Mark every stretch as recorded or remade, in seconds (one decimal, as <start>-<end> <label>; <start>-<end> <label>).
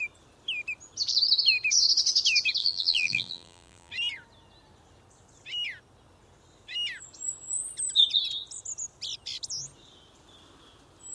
0.0-2.6 recorded; 2.6-3.9 remade; 3.9-11.1 recorded